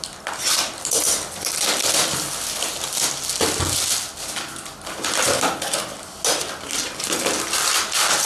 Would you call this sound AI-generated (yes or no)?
no